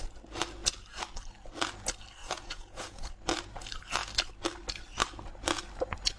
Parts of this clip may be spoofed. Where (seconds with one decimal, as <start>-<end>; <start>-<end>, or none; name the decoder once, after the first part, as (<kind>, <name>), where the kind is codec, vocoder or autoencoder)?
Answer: 2.2-3.1 (vocoder, Vocos)